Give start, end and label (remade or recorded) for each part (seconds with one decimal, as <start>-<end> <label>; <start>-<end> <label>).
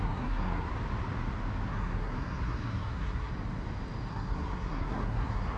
0.0-0.7 remade; 0.7-1.7 recorded; 1.7-3.3 remade; 3.3-4.1 recorded; 4.1-5.6 remade